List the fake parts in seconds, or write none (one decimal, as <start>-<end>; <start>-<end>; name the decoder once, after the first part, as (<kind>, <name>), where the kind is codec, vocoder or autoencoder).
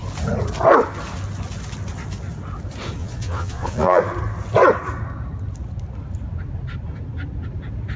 3.0-4.0 (vocoder, Vocos)